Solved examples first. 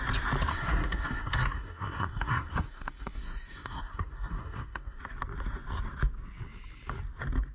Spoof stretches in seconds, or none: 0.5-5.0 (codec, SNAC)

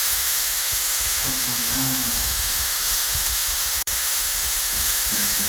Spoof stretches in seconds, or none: 0.0-5.5 (autoencoder, DAC-VAE)

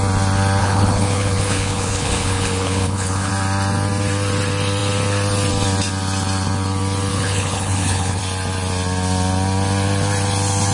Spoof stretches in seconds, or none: 0.6-3.3 (codec, HILCodec); 7.1-8.2

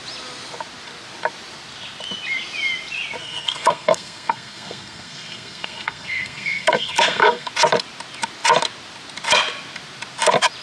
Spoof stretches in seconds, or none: 3.2-7.5 (codec, SNAC)

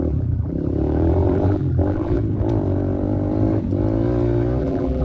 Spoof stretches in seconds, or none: 0.0-2.2 (vocoder, BigVGAN v2); 4.6-5.0

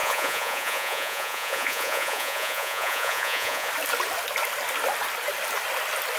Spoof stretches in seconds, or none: 0.0-3.7 (vocoder, Vocos)

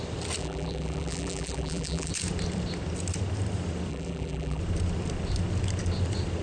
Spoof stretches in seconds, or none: 0.4-2.1 (vocoder, BigVGAN v2); 3.9-4.6